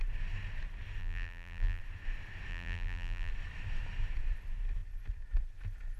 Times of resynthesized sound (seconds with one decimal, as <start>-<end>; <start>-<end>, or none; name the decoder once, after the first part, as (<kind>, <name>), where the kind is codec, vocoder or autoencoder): 1.0-1.8 (vocoder, BigVGAN v2); 2.5-3.3

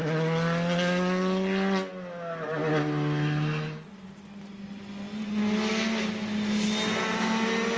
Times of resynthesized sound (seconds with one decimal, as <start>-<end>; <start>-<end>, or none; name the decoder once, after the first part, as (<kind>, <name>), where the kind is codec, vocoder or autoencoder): none

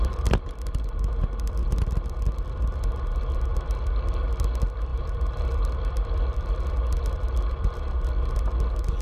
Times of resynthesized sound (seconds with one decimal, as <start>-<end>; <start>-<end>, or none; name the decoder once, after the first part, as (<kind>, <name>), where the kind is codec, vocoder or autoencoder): none

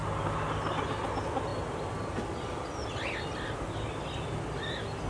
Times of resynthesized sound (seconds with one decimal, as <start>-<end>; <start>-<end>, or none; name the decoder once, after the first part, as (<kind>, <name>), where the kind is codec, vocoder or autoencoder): none

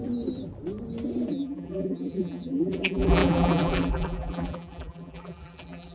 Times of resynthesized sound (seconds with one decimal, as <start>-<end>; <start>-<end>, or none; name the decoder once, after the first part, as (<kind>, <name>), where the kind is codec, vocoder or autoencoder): 1.3-5.9 (vocoder, BigVGAN v2)